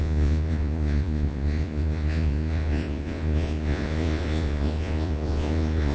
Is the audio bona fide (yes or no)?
no